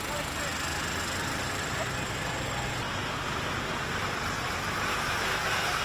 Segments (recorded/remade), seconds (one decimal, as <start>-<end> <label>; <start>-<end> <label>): 0.0-4.9 recorded; 4.9-5.8 remade

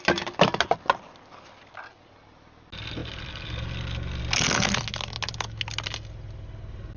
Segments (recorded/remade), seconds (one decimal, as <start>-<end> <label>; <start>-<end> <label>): 0.0-7.0 recorded